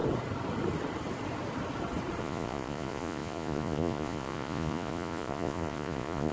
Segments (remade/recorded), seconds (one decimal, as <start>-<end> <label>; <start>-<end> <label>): 0.0-2.2 recorded; 2.2-6.3 remade